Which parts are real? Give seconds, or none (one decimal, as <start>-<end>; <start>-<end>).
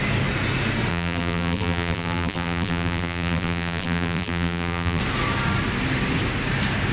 0.0-0.9; 5.0-6.9